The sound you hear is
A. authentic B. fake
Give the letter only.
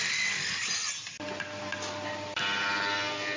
A